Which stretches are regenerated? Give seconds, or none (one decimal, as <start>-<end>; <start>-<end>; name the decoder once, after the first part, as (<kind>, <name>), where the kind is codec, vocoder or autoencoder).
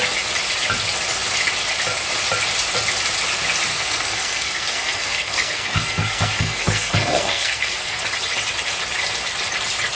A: 3.7-8.0 (codec, SNAC)